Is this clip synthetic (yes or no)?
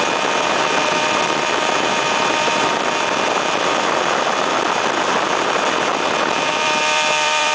yes